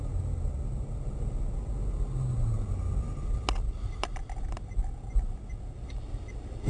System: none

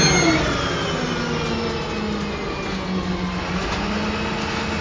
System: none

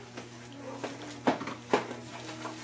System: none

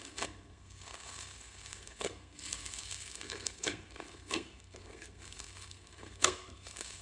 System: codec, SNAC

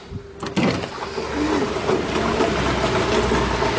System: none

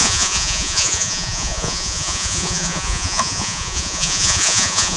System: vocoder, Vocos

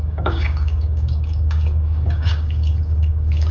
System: codec, DAC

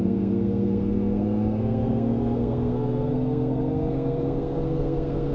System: codec, SNAC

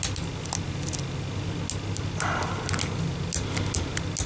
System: none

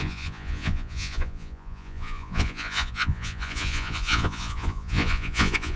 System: vocoder, Vocos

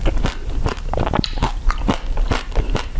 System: vocoder, BigVGAN v2